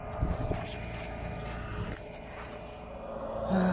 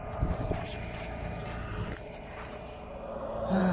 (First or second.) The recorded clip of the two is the first